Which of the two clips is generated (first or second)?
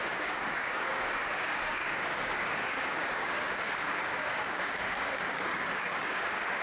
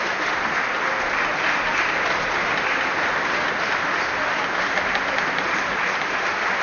first